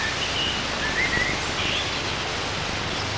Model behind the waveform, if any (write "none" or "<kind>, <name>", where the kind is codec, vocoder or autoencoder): none